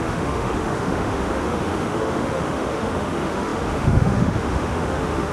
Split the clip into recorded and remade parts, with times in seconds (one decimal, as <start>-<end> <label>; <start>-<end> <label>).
0.0-5.3 remade